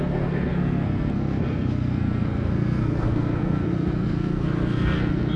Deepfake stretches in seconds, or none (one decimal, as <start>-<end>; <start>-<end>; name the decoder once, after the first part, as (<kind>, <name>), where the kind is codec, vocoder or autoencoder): 0.0-5.4 (codec, SNAC)